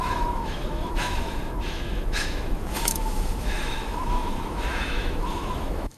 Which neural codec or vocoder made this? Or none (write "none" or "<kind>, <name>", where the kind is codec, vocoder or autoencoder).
autoencoder, DAC-VAE